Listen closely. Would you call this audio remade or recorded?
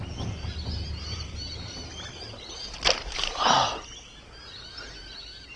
recorded